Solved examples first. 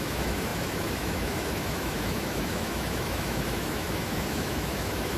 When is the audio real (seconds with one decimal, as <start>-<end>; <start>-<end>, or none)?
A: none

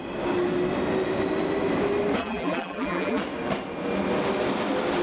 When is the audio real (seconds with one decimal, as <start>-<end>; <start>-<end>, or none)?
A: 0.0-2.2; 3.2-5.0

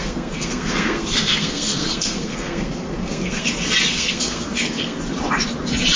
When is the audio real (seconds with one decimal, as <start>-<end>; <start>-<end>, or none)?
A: 3.5-3.9; 5.0-6.0